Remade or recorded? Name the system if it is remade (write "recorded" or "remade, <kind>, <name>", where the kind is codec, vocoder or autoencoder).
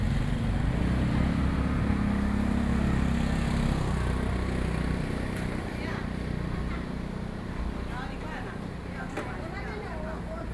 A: recorded